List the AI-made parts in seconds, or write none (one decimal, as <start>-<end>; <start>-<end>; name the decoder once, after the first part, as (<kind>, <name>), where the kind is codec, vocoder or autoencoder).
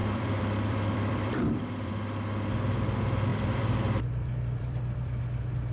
0.0-1.9 (vocoder, BigVGAN v2); 3.3-5.2